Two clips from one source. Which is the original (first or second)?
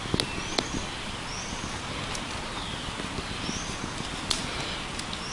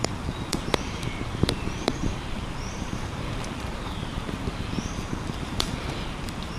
first